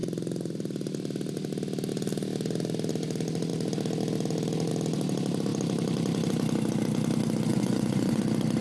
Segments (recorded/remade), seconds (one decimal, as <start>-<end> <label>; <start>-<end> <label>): 0.0-7.5 recorded; 7.5-8.2 remade; 8.2-8.6 recorded